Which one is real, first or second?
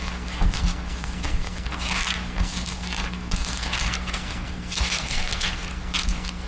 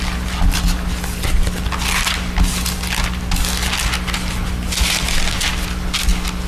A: second